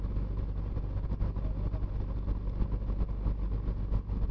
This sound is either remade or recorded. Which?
recorded